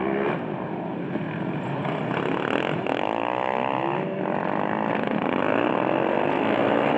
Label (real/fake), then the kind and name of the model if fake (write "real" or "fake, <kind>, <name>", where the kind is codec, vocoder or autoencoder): real